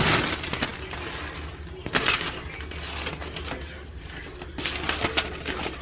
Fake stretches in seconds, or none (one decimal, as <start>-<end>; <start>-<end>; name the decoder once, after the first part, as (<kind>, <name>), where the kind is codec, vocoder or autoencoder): none